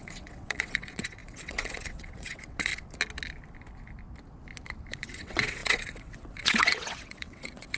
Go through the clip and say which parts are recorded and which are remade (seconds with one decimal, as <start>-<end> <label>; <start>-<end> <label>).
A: 0.0-2.7 remade; 2.7-4.9 recorded; 4.9-7.8 remade